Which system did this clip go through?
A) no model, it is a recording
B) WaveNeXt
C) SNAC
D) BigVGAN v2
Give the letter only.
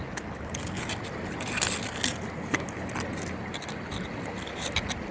A